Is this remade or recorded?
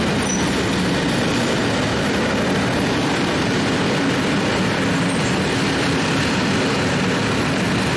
recorded